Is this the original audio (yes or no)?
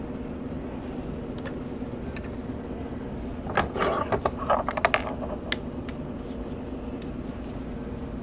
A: yes